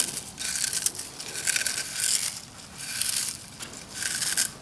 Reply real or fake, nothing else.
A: real